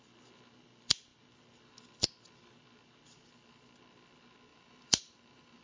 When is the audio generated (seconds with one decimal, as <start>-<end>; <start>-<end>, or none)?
4.5-5.6

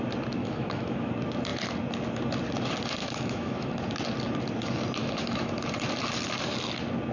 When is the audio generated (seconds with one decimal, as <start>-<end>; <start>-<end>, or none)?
0.4-1.1; 3.0-3.7; 5.0-5.5

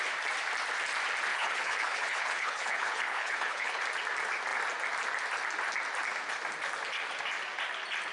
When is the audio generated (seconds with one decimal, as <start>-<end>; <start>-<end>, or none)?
1.3-3.8

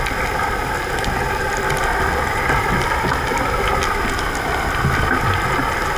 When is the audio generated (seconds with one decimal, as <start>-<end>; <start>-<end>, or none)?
none

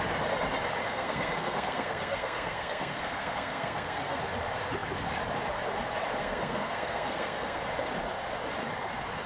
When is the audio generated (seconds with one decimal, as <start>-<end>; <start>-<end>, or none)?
0.8-4.2; 6.2-7.6

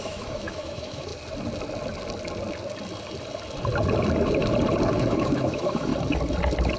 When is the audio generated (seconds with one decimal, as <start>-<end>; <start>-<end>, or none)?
0.0-1.1; 4.9-5.9